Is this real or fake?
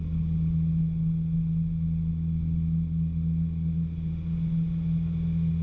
real